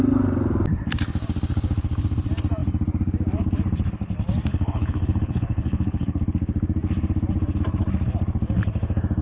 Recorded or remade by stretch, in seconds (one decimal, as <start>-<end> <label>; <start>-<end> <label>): 0.0-4.5 recorded; 4.5-6.2 remade; 6.2-9.2 recorded